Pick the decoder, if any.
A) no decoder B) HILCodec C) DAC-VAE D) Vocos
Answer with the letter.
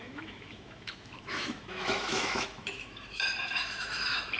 C